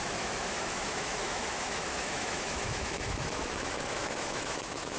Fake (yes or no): yes